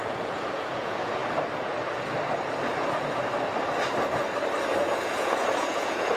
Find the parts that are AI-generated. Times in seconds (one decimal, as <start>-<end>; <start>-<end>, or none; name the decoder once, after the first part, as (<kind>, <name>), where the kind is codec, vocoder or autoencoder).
0.0-1.2 (vocoder, Vocos); 4.9-6.2